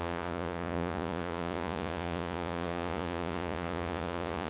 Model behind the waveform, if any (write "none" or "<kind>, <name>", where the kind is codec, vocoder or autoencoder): vocoder, Vocos